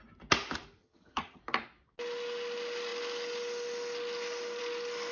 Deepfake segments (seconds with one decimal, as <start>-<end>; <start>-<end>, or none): 0.8-1.4